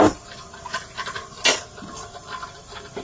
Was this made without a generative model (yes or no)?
yes